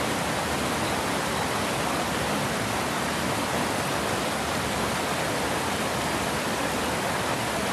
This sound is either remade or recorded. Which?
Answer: recorded